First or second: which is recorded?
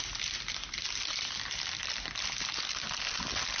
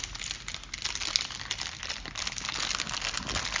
second